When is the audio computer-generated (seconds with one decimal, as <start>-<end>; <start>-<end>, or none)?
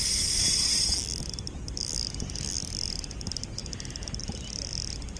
none